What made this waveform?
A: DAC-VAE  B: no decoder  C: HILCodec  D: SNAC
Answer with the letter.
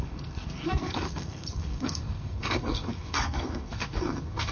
D